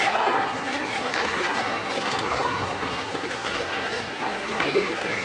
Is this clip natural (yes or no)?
no